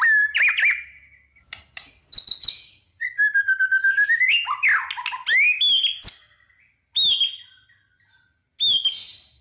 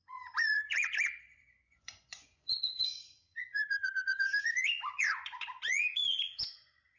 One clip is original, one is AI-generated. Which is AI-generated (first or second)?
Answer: second